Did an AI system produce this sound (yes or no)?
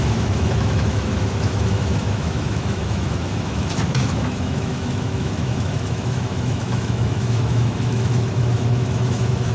yes